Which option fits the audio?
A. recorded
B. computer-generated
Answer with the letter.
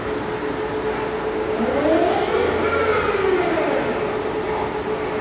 A